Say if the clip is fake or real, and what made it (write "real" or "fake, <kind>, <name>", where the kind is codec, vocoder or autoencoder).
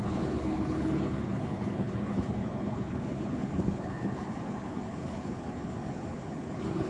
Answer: fake, codec, HILCodec